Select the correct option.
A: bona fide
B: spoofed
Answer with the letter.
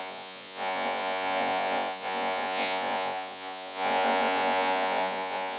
B